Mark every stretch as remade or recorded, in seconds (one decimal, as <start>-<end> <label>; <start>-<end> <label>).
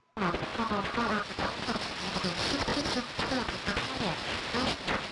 0.0-5.1 recorded